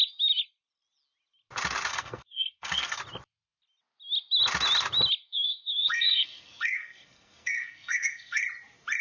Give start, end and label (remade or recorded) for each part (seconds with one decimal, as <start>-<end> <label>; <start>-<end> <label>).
0.0-1.9 recorded; 1.9-3.0 remade; 3.0-5.2 recorded; 5.2-8.4 remade; 8.4-9.0 recorded